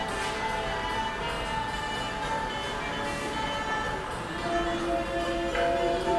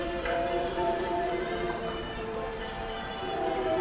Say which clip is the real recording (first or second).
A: first